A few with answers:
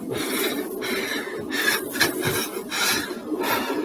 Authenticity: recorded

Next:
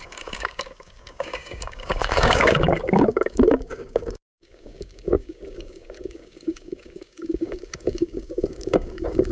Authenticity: remade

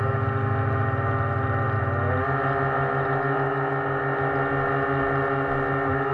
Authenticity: recorded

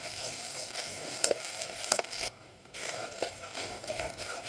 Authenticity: remade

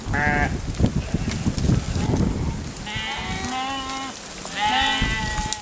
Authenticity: recorded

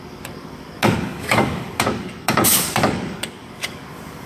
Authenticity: remade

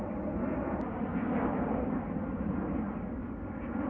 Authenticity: recorded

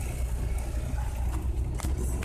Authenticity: recorded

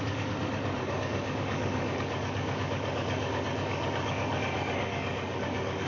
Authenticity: remade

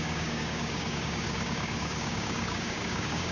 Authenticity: remade